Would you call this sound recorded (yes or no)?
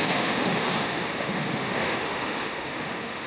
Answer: no